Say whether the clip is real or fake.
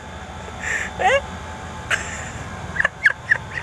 real